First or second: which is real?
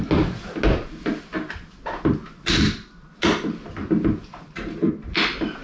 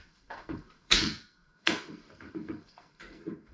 first